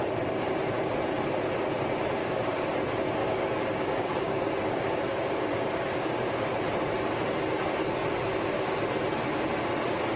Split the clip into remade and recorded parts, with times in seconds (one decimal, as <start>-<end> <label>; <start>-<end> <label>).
0.0-2.2 recorded; 2.2-2.7 remade; 2.7-3.2 recorded; 3.2-6.5 remade; 6.5-10.2 recorded